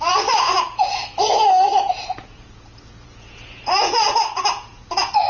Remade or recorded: remade